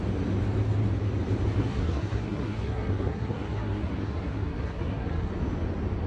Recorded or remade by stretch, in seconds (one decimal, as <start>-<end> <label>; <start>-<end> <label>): 0.0-1.6 recorded; 1.6-5.3 remade; 5.3-6.1 recorded